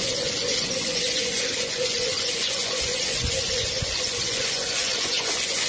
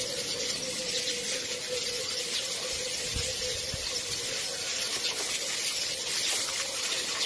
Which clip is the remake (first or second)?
first